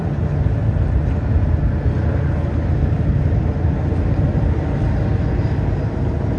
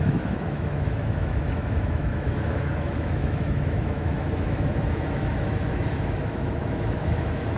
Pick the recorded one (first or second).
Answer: first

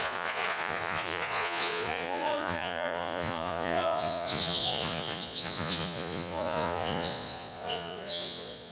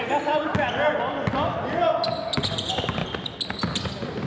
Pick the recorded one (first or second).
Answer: second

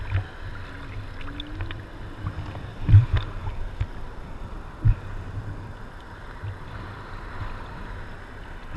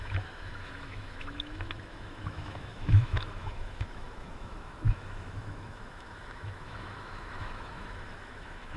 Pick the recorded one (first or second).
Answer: first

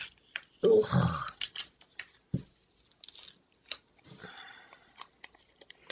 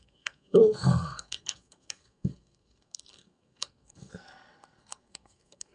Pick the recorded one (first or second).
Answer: first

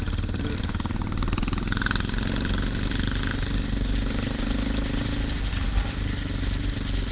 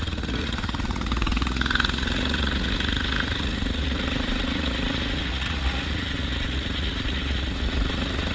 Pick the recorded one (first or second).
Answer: first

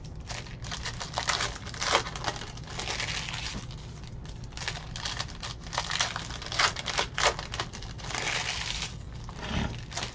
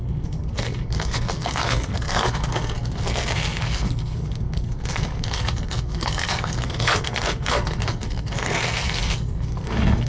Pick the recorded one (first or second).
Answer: first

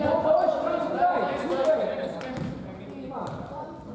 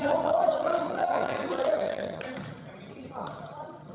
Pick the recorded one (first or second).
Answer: first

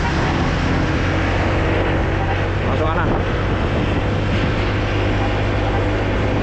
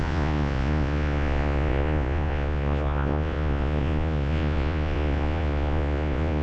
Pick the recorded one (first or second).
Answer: first